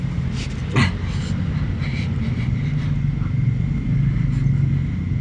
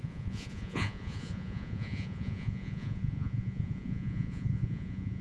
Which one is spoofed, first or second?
second